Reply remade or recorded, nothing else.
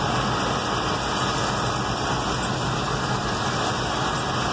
recorded